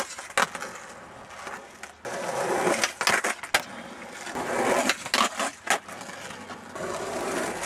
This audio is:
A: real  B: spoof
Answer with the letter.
A